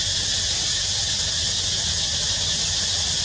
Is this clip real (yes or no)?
yes